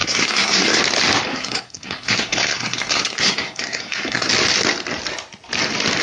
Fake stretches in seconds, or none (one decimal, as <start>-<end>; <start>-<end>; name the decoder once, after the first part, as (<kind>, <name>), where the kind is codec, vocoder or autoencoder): 0.0-0.8 (codec, SNAC); 1.3-4.3